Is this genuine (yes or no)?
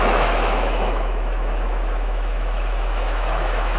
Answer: no